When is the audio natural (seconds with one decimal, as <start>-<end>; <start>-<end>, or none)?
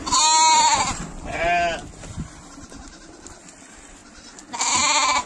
0.0-5.3